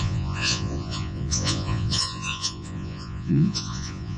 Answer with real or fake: fake